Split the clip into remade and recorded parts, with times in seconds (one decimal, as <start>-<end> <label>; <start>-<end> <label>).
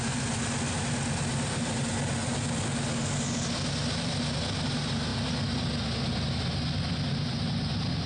0.0-8.1 recorded